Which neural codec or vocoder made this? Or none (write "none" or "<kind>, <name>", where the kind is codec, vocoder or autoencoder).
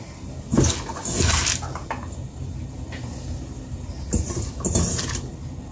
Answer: none